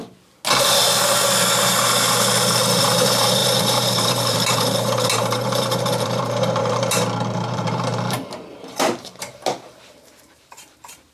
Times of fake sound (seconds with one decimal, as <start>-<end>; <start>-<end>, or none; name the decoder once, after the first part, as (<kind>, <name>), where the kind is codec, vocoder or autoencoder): 2.8-9.1 (vocoder, BigVGAN v2); 9.8-11.1